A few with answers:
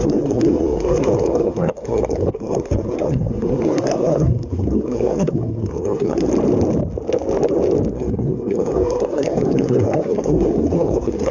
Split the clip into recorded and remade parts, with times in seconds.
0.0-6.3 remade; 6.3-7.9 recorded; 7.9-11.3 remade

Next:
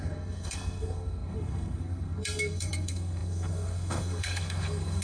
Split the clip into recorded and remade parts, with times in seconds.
0.0-5.0 remade

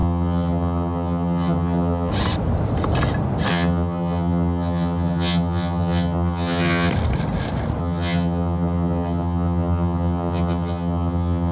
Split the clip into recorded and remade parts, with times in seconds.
0.0-2.1 remade; 2.1-3.5 recorded; 3.5-6.9 remade; 6.9-7.8 recorded; 7.8-11.5 remade